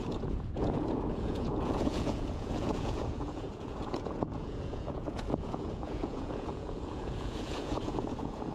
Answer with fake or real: fake